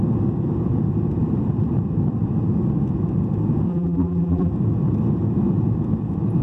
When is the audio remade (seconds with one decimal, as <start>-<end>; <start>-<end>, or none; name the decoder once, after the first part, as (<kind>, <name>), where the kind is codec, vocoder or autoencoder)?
3.7-4.5 (vocoder, BigVGAN v2)